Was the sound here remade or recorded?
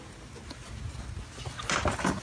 recorded